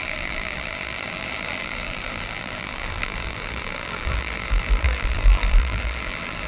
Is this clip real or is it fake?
fake